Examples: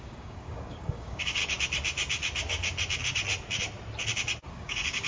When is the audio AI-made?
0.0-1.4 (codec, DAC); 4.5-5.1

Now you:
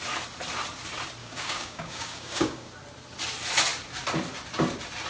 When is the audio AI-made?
1.2-2.7 (codec, DAC)

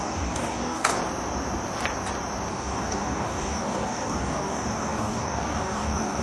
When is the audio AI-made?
0.0-1.0 (codec, DAC); 2.5-6.2

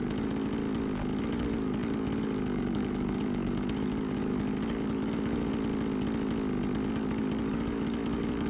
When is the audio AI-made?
0.0-0.5 (codec, DAC); 1.2-5.5; 6.9-8.5

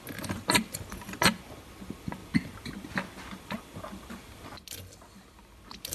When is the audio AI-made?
none

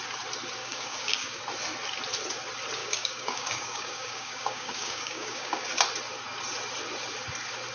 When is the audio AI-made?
0.6-1.4 (codec, DAC); 2.8-5.7